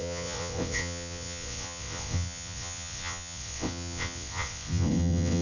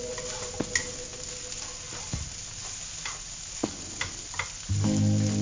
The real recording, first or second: second